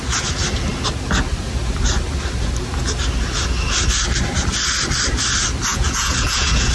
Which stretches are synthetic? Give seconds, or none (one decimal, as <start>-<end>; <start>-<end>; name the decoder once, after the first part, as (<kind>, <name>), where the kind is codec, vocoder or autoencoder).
5.7-6.7 (vocoder, Vocos)